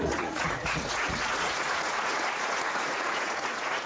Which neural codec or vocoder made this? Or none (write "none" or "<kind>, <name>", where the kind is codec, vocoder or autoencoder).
vocoder, Vocos